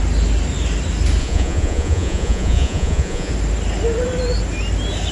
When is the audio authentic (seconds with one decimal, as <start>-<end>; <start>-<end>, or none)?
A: 0.0-1.2; 3.3-5.1